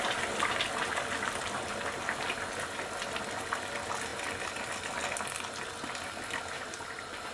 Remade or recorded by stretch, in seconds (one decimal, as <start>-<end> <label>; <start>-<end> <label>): 0.0-7.3 recorded